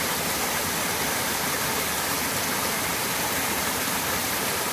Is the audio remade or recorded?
remade